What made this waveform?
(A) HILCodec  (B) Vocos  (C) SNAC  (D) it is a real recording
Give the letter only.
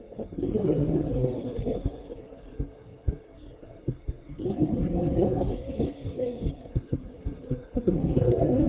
C